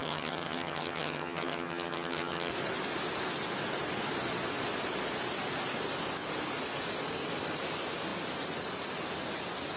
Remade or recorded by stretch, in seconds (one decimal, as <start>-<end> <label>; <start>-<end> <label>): 0.0-2.5 remade; 2.5-9.8 recorded